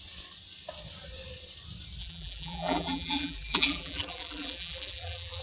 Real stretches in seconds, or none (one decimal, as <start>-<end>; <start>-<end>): 0.0-2.0